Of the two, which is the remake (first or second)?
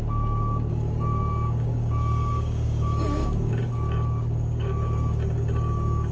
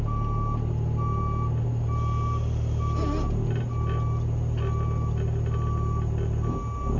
first